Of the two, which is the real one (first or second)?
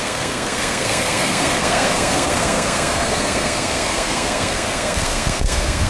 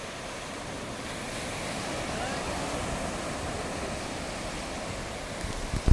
second